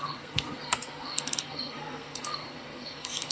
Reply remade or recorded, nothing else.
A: remade